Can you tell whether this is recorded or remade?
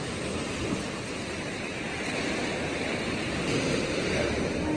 recorded